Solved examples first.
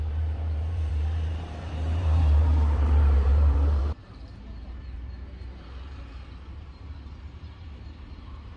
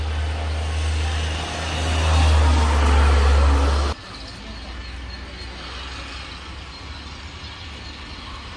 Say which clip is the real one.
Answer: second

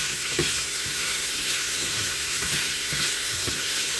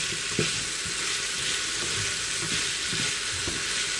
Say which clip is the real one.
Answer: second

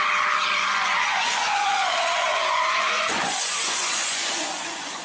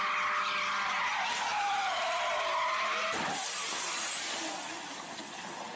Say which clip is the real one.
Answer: second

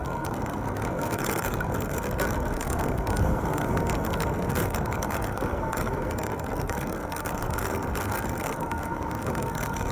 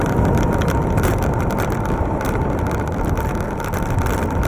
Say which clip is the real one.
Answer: second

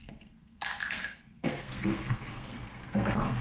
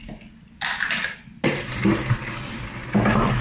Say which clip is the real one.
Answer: second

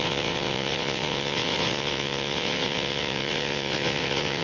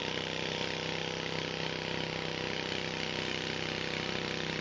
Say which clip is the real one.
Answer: second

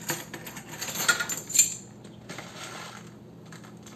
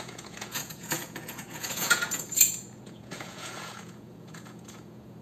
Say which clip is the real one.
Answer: first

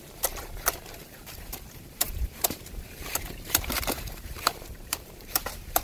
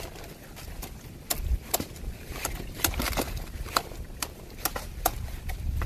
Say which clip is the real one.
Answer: second